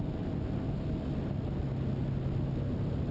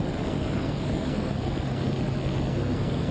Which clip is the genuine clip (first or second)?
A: first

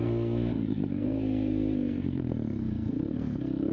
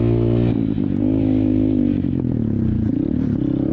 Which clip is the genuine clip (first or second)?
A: second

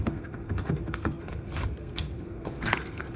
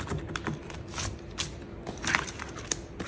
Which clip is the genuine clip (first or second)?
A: second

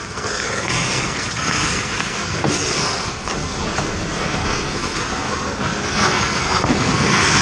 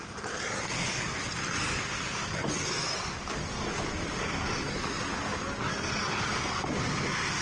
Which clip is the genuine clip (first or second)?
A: second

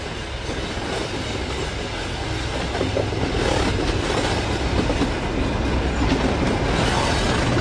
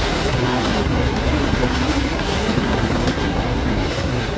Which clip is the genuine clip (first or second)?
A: first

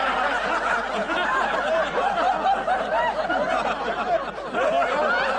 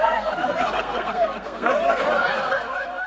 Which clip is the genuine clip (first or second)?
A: first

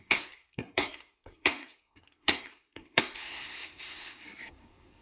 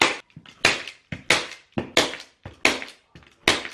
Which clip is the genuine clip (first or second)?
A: second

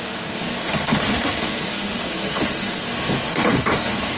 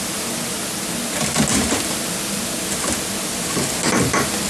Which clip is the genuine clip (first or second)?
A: second